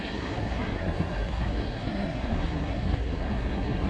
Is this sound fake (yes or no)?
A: yes